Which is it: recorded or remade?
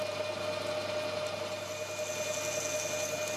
recorded